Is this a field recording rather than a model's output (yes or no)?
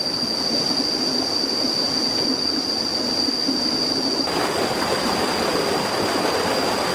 yes